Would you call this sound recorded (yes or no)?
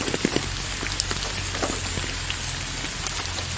yes